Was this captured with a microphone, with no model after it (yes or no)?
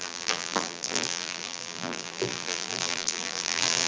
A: no